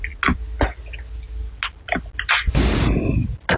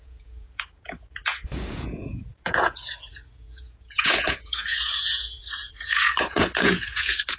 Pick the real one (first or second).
first